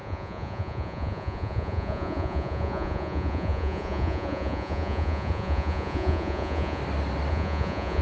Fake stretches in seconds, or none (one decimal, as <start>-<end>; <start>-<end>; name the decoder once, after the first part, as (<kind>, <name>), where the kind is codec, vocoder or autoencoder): 0.0-6.8 (vocoder, Vocos); 7.3-8.0